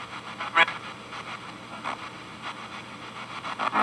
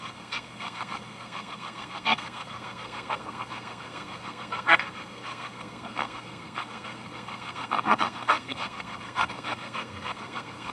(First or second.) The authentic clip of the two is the first